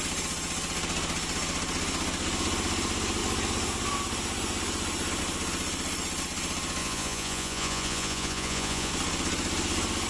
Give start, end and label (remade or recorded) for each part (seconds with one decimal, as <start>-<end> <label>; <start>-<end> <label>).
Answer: 0.0-6.8 recorded; 6.8-8.9 remade; 8.9-10.1 recorded

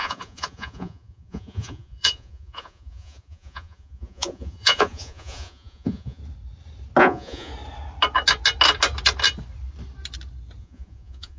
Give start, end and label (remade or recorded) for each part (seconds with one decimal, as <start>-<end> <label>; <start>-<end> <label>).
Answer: 0.0-6.2 remade; 6.2-7.0 recorded; 7.0-7.5 remade; 7.5-10.6 recorded; 10.6-11.4 remade

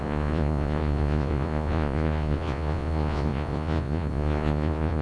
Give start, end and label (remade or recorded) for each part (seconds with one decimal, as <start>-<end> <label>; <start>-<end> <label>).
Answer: 0.0-5.0 remade

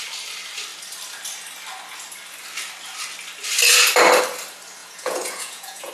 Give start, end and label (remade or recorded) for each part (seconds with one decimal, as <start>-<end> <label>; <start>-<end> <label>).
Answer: 0.0-4.8 recorded; 4.8-5.9 remade

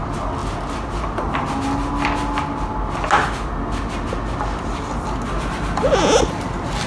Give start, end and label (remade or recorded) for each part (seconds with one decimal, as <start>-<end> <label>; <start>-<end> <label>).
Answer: 0.0-6.9 recorded

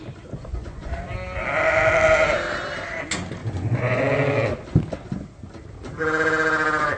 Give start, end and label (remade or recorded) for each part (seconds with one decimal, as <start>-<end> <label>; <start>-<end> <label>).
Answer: 0.0-0.4 recorded; 0.4-0.9 remade; 0.9-3.4 recorded; 3.4-4.0 remade; 4.0-7.0 recorded